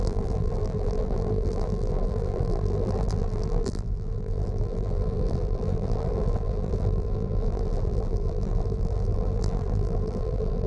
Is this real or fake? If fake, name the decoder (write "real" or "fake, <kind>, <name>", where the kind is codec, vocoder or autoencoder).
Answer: fake, vocoder, BigVGAN v2